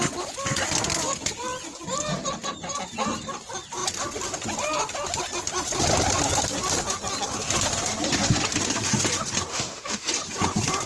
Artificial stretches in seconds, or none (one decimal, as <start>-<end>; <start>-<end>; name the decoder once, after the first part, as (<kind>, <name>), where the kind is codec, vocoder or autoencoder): 9.5-10.1 (autoencoder, DAC-VAE)